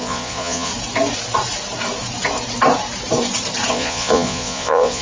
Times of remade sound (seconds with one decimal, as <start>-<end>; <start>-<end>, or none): 0.0-0.7; 3.7-5.0